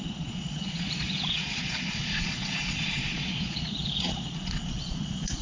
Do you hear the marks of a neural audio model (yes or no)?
yes